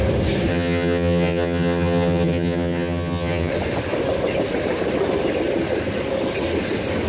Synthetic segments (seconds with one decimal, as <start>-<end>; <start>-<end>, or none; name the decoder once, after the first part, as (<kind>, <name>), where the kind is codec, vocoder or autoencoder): 0.5-3.5 (vocoder, HiFi-GAN)